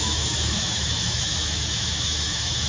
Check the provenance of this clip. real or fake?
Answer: fake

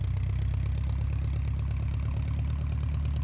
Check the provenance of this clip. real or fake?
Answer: real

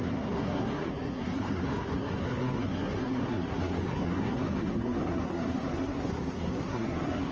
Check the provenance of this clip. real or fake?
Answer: fake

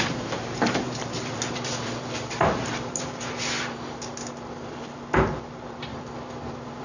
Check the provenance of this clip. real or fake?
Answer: fake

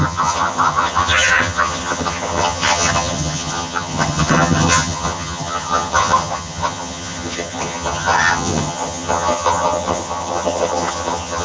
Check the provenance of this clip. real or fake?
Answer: fake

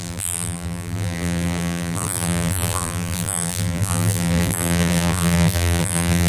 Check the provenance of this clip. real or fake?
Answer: fake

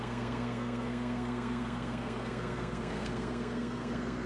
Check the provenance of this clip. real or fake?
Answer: fake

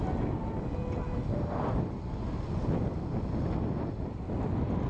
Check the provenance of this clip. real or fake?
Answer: real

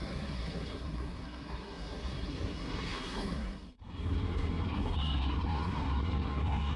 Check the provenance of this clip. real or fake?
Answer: fake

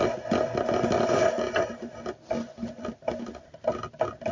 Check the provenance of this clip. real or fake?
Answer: real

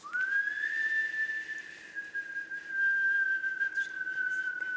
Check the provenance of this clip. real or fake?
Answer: real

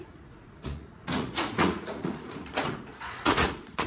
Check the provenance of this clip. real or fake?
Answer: fake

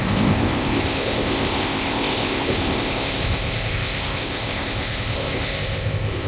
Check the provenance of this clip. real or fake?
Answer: fake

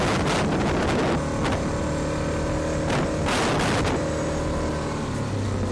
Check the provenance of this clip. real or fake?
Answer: real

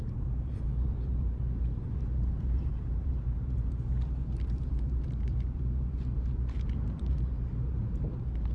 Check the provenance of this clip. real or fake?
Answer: fake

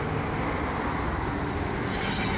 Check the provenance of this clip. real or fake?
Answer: real